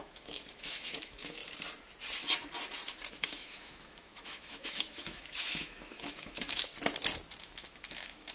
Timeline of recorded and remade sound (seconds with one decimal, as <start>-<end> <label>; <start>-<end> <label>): 0.0-1.4 remade; 1.4-3.1 recorded; 3.1-6.7 remade; 6.7-7.4 recorded; 7.4-8.3 remade

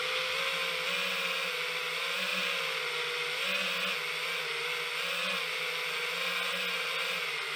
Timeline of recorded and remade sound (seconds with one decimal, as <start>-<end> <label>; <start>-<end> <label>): 0.0-7.6 recorded

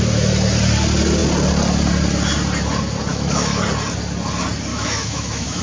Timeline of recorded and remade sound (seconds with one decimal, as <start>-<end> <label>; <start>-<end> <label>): 0.0-3.1 recorded; 3.1-3.6 remade; 3.6-4.7 recorded; 4.7-5.6 remade

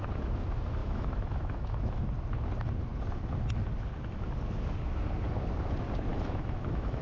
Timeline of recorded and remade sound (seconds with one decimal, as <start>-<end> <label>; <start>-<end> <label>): 0.0-0.8 recorded; 0.8-2.0 remade; 2.0-6.1 recorded; 6.1-7.0 remade

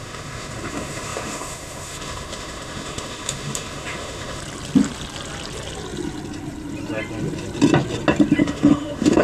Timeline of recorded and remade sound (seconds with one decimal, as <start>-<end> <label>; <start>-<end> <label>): 0.0-4.4 remade; 4.4-8.4 recorded; 8.4-9.2 remade